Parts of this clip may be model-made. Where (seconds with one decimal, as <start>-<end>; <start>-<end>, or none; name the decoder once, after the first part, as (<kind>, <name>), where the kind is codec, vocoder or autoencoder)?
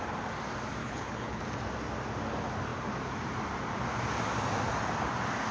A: 0.8-1.4 (codec, HILCodec)